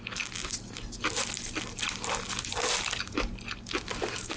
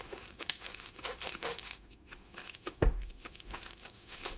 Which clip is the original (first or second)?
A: first